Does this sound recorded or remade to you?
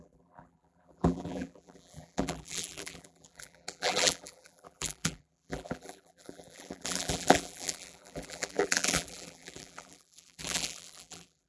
remade